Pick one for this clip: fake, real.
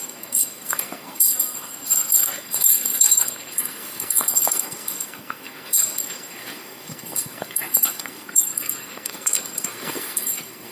fake